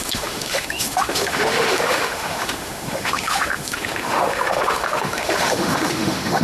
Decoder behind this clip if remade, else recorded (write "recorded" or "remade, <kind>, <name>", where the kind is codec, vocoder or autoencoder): remade, autoencoder, DAC-VAE